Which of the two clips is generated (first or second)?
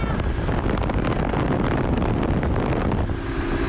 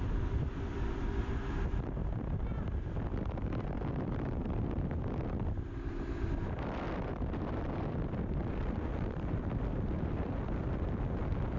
second